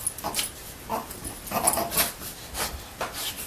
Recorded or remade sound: recorded